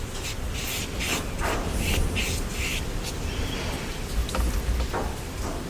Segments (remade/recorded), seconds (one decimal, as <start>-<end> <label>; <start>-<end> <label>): 0.0-1.1 recorded; 1.1-3.1 remade; 3.1-5.7 recorded